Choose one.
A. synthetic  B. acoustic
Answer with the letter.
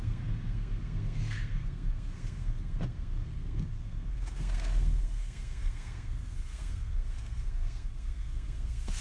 A